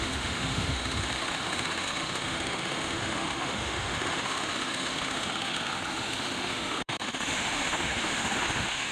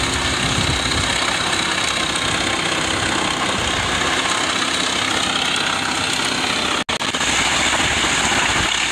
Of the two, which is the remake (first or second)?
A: first